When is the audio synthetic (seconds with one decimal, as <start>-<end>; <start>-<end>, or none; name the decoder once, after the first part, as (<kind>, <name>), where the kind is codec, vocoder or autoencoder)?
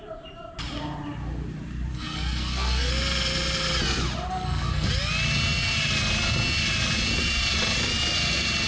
1.9-2.9 (codec, SNAC); 4.3-4.9